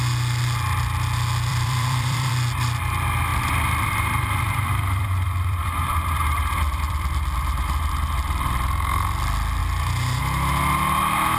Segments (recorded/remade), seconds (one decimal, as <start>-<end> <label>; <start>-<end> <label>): 0.0-1.5 recorded; 1.5-2.3 remade; 2.3-3.3 recorded; 3.3-7.9 remade; 7.9-9.6 recorded; 9.6-10.2 remade; 10.2-11.4 recorded